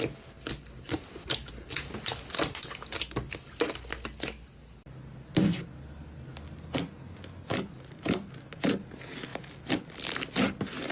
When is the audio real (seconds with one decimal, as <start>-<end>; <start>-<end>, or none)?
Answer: 0.0-10.9